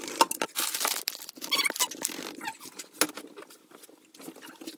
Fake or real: real